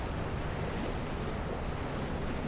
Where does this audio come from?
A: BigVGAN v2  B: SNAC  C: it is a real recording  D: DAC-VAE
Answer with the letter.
C